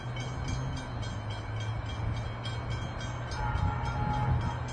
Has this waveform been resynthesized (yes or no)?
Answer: no